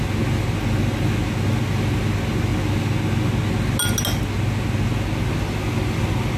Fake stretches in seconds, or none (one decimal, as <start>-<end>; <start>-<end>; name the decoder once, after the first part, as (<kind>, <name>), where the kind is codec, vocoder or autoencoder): none